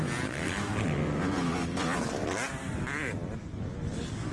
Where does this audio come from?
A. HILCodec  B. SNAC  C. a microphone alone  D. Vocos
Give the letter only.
C